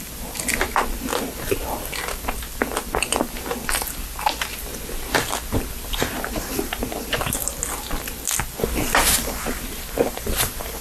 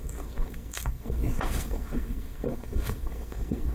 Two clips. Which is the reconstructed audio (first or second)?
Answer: second